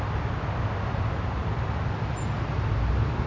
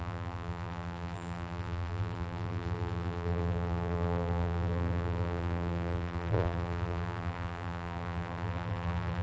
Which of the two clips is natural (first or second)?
first